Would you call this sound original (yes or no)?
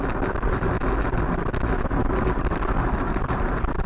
yes